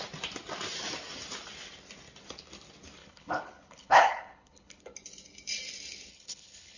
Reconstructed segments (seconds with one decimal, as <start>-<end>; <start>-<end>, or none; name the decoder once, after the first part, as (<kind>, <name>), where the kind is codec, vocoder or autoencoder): 3.0-4.8 (codec, HILCodec); 6.1-6.8